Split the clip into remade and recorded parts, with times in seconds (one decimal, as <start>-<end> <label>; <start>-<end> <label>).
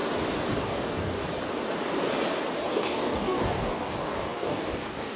0.0-0.6 recorded; 0.6-1.2 remade; 1.2-2.7 recorded; 2.7-5.2 remade